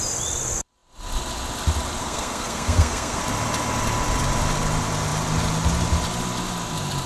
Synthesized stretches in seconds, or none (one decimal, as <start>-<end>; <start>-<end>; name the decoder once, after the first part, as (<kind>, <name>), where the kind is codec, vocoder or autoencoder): 2.0-3.2 (codec, SNAC)